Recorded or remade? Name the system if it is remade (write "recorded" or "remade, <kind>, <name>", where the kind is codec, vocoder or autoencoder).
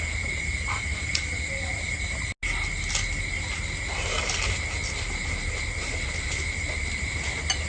recorded